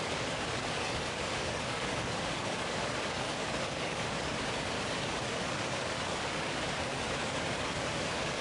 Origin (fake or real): fake